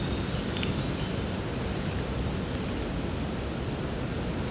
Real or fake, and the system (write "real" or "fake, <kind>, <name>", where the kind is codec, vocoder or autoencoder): real